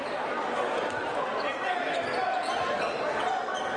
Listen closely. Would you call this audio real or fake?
real